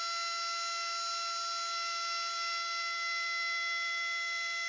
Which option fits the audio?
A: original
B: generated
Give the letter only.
A